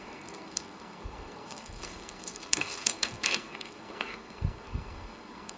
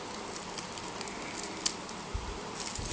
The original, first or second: second